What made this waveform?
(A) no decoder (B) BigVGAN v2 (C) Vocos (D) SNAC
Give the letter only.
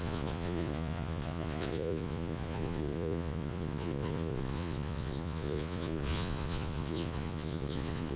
C